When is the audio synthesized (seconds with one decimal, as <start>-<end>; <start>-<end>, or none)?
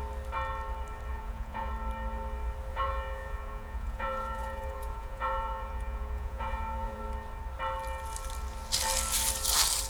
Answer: 1.1-1.7; 2.7-7.0